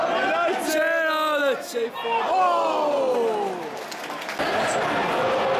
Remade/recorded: recorded